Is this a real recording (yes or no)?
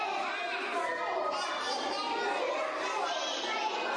yes